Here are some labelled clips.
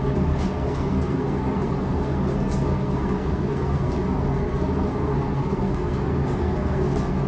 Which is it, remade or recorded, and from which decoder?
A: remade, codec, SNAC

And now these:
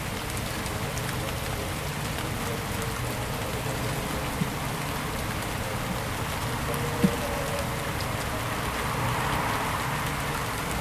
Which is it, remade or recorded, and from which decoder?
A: recorded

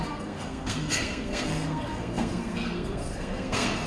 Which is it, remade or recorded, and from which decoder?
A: remade, codec, SNAC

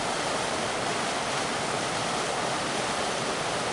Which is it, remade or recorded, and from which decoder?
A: recorded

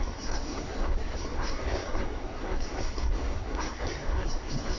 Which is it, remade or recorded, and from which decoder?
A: remade, codec, SNAC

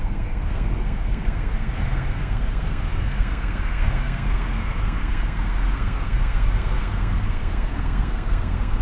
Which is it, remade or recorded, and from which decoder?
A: remade, codec, SNAC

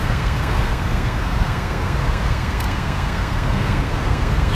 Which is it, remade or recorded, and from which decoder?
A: remade, codec, SNAC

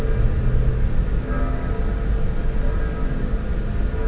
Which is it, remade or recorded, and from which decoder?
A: recorded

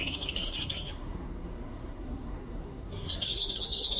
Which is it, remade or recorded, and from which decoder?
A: remade, codec, SNAC